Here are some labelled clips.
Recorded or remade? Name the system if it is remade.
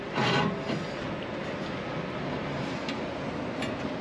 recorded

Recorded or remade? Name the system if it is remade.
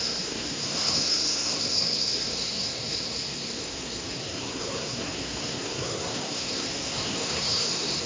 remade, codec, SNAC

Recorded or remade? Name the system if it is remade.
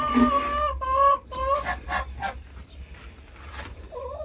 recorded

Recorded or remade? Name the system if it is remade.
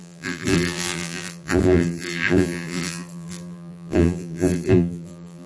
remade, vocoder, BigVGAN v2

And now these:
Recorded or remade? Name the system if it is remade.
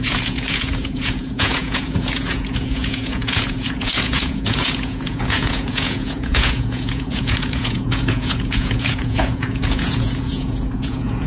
remade, vocoder, Vocos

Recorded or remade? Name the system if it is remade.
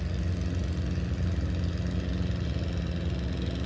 recorded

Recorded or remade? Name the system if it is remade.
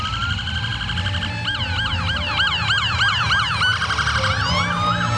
recorded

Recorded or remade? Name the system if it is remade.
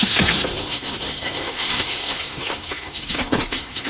remade, codec, SNAC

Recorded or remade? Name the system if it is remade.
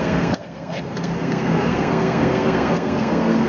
remade, codec, SNAC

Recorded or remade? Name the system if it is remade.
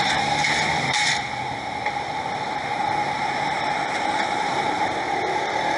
remade, vocoder, BigVGAN v2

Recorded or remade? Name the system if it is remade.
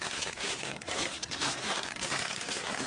remade, codec, SNAC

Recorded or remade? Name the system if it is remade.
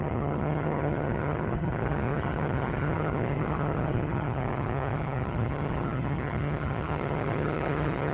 remade, vocoder, HiFi-GAN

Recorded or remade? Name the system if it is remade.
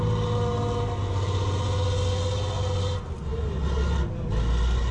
recorded